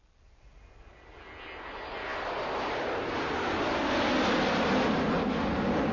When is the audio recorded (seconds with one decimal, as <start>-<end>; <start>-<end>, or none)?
0.0-5.9